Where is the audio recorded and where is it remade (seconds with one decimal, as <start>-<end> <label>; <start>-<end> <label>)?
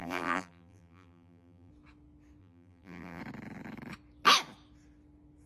0.0-1.7 remade; 1.7-2.4 recorded; 2.4-3.2 remade; 3.2-5.5 recorded